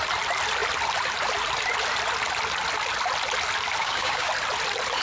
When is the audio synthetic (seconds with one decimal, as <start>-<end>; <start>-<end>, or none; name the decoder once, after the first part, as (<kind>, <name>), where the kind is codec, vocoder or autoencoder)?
3.8-4.3 (codec, DAC)